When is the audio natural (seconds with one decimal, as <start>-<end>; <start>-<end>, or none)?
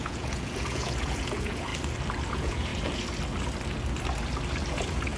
1.7-2.3; 2.7-4.7